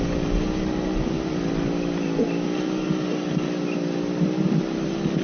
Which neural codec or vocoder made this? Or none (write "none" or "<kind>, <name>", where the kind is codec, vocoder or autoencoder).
none